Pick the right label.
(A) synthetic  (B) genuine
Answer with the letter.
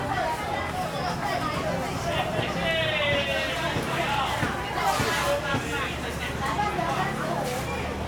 B